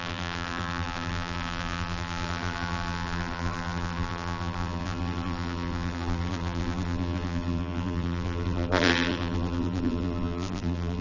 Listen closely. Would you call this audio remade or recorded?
remade